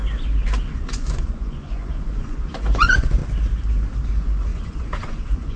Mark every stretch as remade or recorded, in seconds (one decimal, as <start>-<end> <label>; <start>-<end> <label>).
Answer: 0.0-0.6 recorded; 0.6-3.2 remade; 3.2-4.1 recorded; 4.1-5.6 remade